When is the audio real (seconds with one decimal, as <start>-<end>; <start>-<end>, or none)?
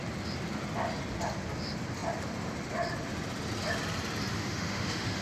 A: 0.0-4.3